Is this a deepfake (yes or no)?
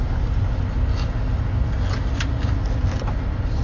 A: no